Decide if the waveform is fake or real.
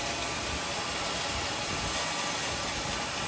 real